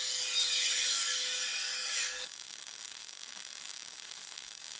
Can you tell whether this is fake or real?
fake